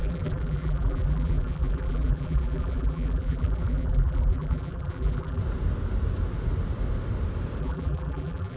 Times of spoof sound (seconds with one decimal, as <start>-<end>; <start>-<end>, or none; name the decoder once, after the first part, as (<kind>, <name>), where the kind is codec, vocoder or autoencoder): 0.0-5.4 (vocoder, BigVGAN v2); 7.6-8.6